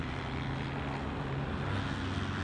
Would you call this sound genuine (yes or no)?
yes